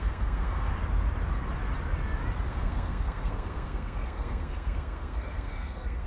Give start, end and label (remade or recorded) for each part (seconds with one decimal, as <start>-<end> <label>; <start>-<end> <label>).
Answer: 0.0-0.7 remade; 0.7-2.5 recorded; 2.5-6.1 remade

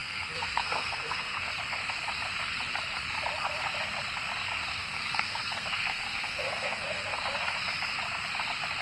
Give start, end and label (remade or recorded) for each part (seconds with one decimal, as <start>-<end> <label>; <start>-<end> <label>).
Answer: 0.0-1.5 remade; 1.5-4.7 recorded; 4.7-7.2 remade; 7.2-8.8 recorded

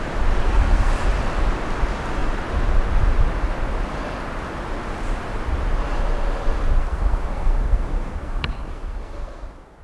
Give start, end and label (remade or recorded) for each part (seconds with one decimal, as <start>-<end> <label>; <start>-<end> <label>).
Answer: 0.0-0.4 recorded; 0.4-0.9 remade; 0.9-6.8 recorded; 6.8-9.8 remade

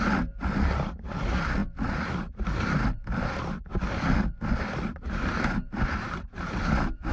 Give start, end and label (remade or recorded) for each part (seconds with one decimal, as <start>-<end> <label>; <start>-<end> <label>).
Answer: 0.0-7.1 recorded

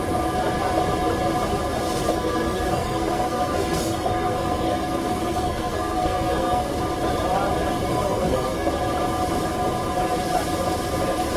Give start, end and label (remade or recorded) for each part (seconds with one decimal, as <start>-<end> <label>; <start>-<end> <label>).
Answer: 0.0-2.1 recorded; 2.1-6.8 remade; 6.8-7.9 recorded; 7.9-8.7 remade; 8.7-11.4 recorded